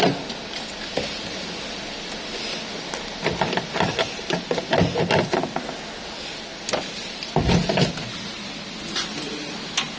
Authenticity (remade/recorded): recorded